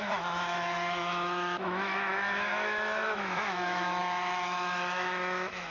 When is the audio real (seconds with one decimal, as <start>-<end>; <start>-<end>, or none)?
none